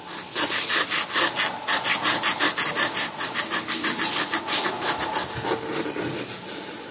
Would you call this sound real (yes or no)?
yes